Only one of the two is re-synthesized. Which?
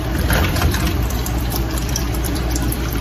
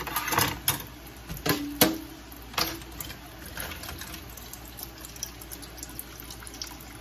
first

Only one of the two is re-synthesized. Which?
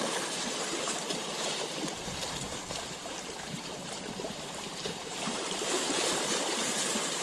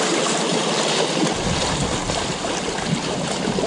first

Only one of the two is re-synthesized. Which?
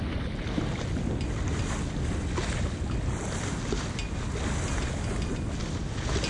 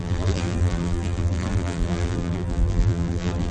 second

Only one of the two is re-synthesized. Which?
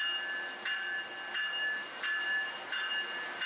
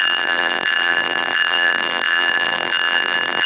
second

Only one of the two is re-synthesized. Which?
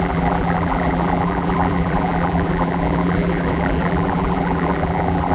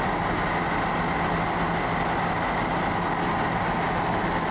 first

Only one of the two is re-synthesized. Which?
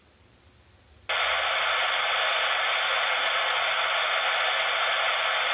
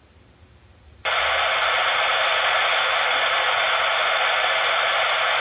second